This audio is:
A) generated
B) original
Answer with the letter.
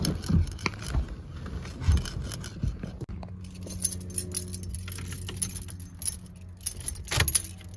B